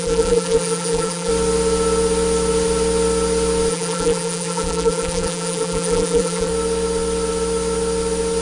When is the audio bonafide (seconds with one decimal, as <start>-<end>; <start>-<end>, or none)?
1.3-3.7; 6.5-8.4